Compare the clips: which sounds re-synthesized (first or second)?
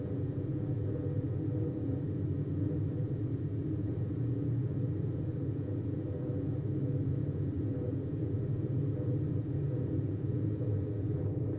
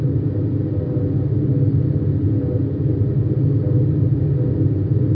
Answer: first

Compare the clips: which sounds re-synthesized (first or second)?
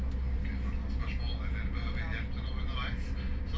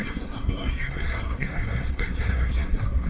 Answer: second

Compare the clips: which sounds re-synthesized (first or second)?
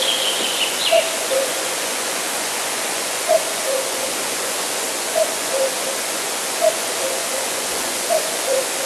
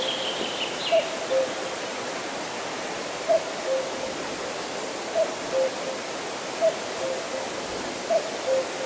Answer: first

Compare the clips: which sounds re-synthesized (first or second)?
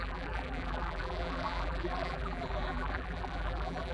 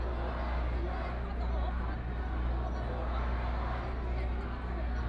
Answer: first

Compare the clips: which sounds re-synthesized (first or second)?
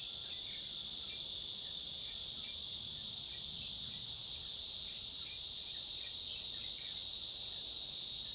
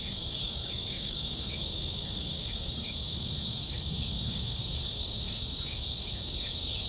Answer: second